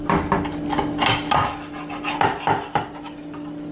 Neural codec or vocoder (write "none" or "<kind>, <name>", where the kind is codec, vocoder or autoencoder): none